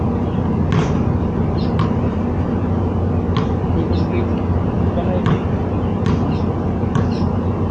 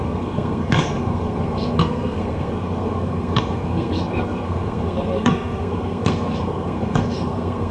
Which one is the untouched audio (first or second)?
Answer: first